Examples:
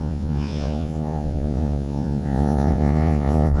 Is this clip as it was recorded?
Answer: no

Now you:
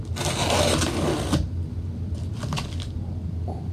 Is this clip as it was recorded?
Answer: yes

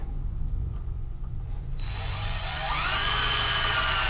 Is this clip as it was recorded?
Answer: no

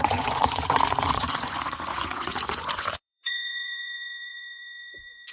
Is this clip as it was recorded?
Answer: no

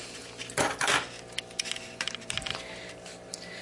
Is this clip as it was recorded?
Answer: yes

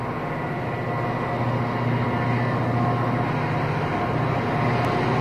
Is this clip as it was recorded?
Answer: yes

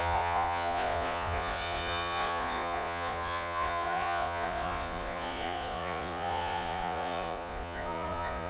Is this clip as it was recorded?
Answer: no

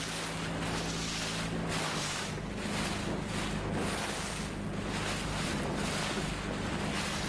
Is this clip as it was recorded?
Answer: yes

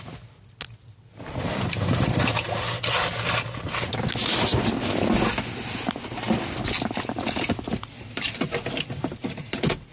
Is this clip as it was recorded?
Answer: yes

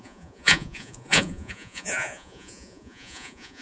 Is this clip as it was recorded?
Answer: no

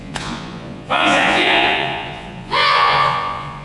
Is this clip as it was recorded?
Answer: no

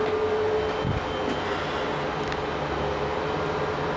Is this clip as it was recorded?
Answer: yes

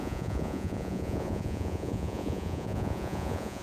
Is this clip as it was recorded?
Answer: no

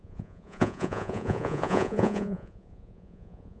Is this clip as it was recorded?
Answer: no